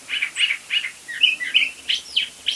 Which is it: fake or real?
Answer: real